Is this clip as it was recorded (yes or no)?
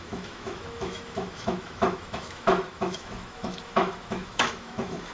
no